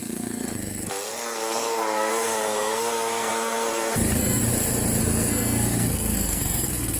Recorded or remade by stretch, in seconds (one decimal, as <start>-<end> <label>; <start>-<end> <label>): 0.0-4.4 remade; 4.4-5.0 recorded; 5.0-7.0 remade